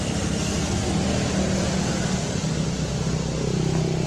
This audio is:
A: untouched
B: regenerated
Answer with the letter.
A